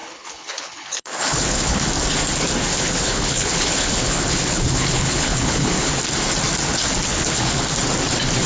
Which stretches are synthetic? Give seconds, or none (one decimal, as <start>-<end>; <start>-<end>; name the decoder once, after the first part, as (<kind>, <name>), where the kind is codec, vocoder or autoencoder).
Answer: 0.0-1.9 (codec, HILCodec); 2.7-6.0; 7.1-7.6